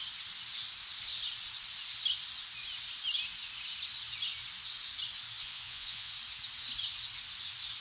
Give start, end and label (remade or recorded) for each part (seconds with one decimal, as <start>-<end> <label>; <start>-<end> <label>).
0.0-5.4 recorded; 5.4-6.1 remade; 6.1-7.8 recorded